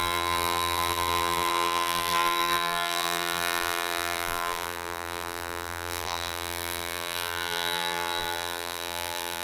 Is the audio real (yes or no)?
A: no